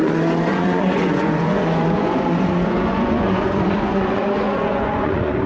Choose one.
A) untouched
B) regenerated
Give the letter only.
B